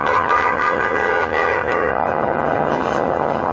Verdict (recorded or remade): remade